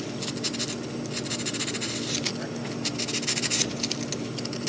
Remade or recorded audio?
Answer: recorded